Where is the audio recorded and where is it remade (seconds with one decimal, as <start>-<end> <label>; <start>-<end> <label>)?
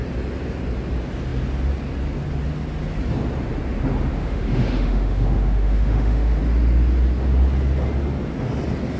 0.0-4.1 recorded; 4.1-6.4 remade; 6.4-9.0 recorded